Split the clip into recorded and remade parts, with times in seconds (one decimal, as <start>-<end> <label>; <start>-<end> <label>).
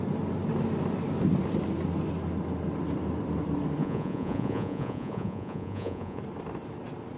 0.0-3.8 recorded; 3.8-6.2 remade; 6.2-7.2 recorded